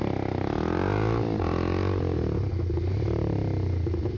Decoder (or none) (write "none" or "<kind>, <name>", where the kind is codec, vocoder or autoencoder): none